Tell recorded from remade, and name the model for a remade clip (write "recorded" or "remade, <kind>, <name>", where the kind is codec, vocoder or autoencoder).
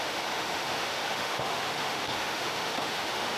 remade, autoencoder, DAC-VAE